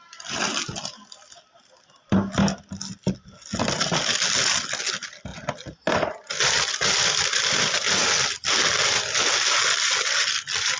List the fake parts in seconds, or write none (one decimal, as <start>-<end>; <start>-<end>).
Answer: none